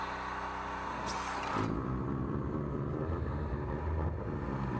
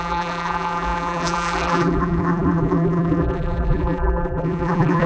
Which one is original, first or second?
first